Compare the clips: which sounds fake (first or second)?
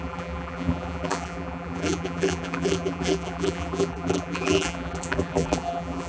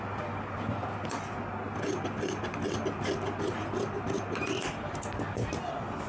first